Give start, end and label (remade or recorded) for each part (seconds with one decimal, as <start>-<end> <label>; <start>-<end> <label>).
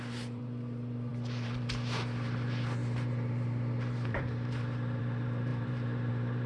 0.0-6.5 remade